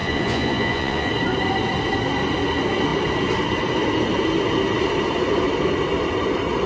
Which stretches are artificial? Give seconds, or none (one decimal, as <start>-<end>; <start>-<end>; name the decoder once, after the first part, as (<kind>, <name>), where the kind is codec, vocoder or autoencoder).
0.0-1.1 (vocoder, Vocos)